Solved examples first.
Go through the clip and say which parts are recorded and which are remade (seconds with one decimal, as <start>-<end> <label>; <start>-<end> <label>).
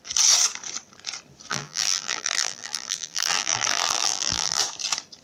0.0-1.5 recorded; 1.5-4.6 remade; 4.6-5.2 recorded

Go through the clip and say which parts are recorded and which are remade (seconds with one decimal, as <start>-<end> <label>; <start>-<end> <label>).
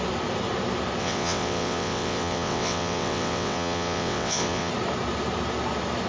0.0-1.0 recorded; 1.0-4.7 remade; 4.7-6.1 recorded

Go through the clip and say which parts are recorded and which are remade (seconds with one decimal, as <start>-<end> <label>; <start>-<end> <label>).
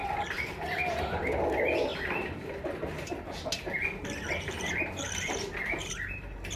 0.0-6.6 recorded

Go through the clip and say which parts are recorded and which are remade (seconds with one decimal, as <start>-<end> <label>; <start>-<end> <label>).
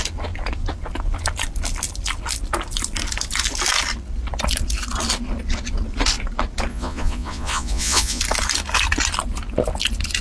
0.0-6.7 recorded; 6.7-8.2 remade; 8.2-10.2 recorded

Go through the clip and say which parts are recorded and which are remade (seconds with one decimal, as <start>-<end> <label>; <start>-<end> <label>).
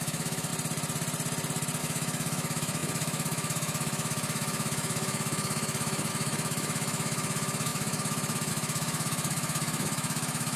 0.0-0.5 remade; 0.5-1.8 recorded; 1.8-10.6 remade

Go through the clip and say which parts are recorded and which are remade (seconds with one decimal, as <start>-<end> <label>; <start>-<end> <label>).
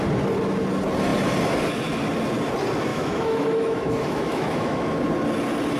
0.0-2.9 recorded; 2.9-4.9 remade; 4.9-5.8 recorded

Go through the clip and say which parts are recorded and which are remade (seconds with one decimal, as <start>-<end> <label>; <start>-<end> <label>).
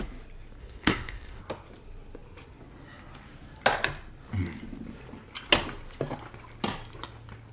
0.0-0.6 recorded; 0.6-1.4 remade; 1.4-7.5 recorded